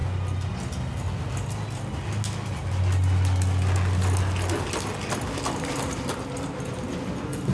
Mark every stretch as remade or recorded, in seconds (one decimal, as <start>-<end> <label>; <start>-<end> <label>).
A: 0.0-7.5 recorded